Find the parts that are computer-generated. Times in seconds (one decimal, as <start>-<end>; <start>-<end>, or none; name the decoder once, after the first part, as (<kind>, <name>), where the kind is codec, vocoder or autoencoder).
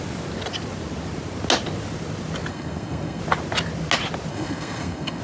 2.5-3.2 (codec, SNAC); 4.3-5.2